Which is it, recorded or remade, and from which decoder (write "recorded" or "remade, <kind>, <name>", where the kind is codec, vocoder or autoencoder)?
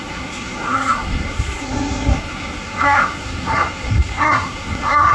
remade, codec, SNAC